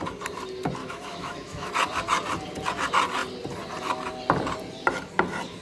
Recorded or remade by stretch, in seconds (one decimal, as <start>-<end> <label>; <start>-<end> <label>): 0.0-0.8 recorded; 0.8-1.7 remade; 1.7-5.6 recorded